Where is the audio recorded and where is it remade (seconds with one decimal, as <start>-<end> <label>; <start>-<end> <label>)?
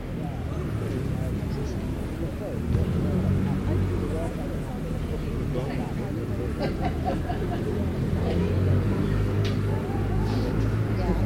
0.0-8.2 recorded; 8.2-10.5 remade; 10.5-11.3 recorded